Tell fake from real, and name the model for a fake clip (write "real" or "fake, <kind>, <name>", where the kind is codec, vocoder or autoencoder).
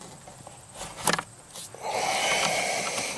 real